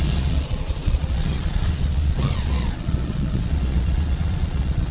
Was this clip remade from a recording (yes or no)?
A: yes